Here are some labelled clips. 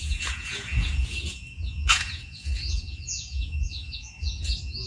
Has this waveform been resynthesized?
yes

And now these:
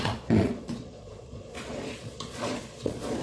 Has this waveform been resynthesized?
yes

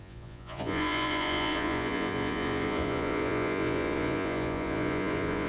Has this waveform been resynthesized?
yes